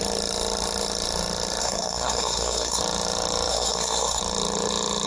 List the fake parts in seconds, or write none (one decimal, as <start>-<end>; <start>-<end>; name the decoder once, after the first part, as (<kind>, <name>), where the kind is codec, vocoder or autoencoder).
1.6-2.8 (codec, SNAC); 3.5-4.2